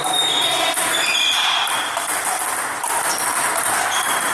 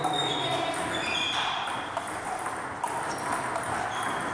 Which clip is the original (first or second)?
second